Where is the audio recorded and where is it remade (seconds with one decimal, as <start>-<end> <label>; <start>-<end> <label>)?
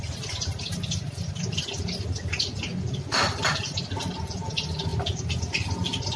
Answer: 0.0-2.7 recorded; 2.7-4.0 remade; 4.0-6.2 recorded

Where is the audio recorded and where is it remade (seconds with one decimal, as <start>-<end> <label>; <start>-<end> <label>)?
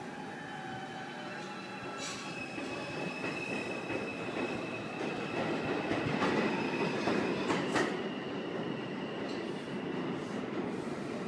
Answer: 0.0-2.1 recorded; 2.1-3.2 remade; 3.2-11.3 recorded